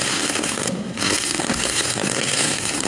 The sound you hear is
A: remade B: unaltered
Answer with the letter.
A